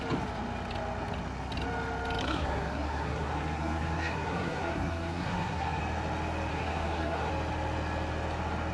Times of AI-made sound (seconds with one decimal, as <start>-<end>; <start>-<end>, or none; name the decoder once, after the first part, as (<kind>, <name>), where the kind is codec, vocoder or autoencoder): 2.2-5.8 (codec, SNAC); 6.5-7.3